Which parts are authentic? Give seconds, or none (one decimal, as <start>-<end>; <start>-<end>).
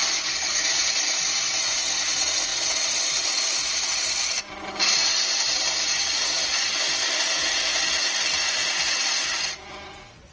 0.5-2.5; 4.4-5.1; 9.4-10.3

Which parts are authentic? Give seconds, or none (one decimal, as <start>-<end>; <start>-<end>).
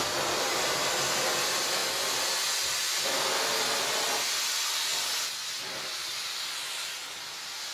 0.0-7.7